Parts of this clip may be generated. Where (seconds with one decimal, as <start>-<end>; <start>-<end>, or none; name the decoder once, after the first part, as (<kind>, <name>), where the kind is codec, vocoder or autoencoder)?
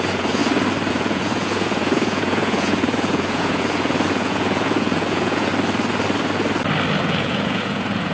0.0-0.4 (vocoder, Vocos); 0.9-5.5; 7.0-8.1